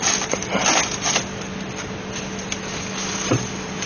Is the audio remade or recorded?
recorded